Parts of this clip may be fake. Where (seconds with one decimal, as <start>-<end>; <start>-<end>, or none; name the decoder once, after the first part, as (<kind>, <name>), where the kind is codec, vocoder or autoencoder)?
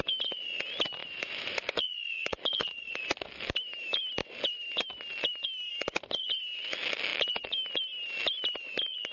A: 1.0-3.0 (vocoder, Vocos)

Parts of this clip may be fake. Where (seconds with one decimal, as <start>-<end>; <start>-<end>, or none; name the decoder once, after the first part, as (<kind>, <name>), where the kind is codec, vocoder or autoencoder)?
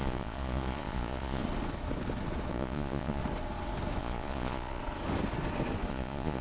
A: 0.0-1.4 (vocoder, Vocos); 2.5-3.2; 4.0-4.8; 5.9-6.4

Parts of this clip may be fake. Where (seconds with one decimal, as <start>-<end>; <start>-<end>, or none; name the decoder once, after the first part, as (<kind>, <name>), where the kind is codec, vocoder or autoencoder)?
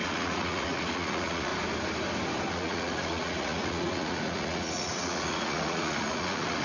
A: 0.0-1.5 (vocoder, Vocos); 2.5-6.6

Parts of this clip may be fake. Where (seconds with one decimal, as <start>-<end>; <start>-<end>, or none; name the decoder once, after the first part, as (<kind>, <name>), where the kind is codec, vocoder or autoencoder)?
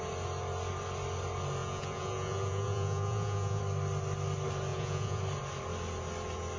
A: 1.6-3.6 (vocoder, Vocos); 4.7-5.2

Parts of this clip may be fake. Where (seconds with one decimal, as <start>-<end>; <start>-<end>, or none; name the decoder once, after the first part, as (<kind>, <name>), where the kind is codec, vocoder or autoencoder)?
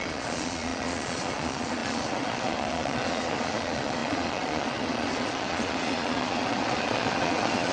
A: 0.0-7.7 (vocoder, Vocos)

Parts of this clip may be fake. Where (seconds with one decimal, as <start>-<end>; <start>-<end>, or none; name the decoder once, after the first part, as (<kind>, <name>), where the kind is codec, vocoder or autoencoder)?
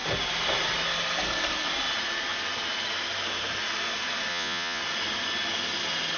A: 4.3-4.8 (vocoder, Vocos)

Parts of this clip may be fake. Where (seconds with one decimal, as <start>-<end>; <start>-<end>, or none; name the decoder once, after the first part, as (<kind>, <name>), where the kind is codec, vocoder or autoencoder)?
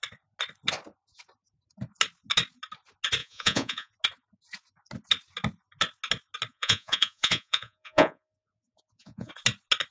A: 3.2-3.9 (vocoder, Vocos); 6.5-9.3